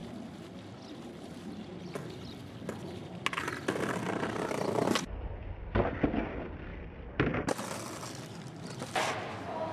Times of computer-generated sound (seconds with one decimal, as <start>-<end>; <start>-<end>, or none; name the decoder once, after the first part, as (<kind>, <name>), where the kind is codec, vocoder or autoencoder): 6.7-8.4 (vocoder, BigVGAN v2)